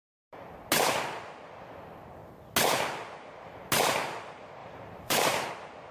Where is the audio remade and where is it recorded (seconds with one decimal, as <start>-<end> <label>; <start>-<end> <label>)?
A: 0.0-4.6 recorded; 4.6-5.5 remade; 5.5-5.9 recorded